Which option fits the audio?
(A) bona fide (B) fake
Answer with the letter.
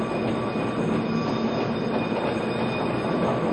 A